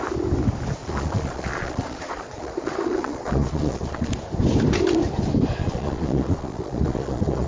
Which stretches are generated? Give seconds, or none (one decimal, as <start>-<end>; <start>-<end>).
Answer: 0.8-4.1; 5.6-7.5